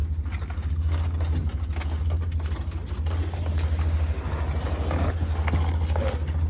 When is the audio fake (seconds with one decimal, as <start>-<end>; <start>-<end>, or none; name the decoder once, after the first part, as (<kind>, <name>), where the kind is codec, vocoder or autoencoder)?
none